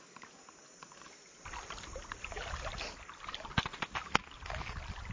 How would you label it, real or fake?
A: real